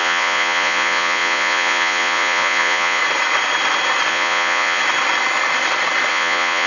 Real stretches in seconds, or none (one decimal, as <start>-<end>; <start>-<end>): 3.0-4.1; 4.8-6.1